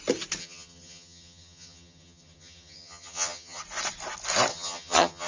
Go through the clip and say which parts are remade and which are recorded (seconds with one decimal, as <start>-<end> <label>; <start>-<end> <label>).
0.0-0.4 recorded; 0.4-3.6 remade; 3.6-4.5 recorded; 4.5-5.3 remade